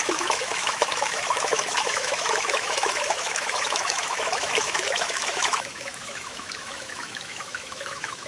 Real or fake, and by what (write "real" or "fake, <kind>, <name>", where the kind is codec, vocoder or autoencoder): fake, autoencoder, DAC-VAE